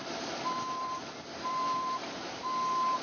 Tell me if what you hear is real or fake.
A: fake